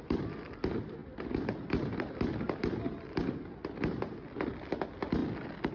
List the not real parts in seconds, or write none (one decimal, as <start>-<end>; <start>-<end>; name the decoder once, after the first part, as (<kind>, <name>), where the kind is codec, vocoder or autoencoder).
none